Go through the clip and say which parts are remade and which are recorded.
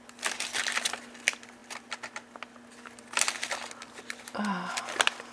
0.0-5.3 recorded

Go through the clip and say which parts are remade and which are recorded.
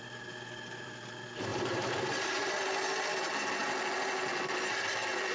0.0-1.5 recorded; 1.5-2.5 remade; 2.5-5.3 recorded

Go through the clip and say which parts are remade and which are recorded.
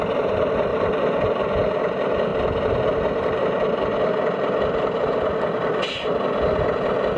0.0-7.2 recorded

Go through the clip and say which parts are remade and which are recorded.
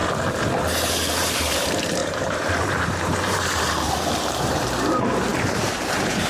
0.0-0.9 recorded; 0.9-6.3 remade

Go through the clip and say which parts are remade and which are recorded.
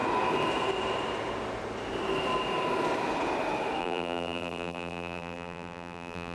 0.0-3.8 recorded; 3.8-6.3 remade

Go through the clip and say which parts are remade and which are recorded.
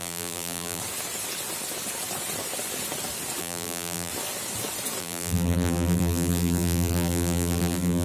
0.0-0.8 remade; 0.8-3.4 recorded; 3.4-4.1 remade; 4.1-5.0 recorded; 5.0-8.0 remade